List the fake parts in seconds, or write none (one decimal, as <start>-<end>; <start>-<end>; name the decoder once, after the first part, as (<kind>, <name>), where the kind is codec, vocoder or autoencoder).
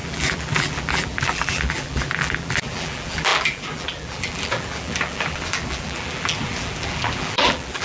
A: 0.0-7.8 (vocoder, BigVGAN v2)